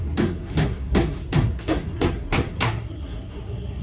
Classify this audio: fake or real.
fake